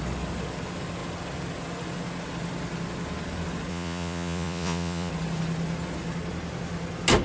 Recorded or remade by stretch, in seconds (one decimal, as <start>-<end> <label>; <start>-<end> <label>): 0.0-3.7 recorded; 3.7-5.1 remade; 5.1-7.2 recorded